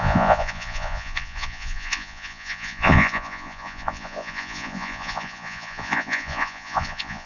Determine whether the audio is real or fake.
fake